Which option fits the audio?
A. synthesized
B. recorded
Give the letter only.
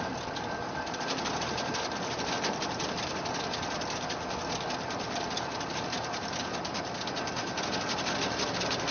B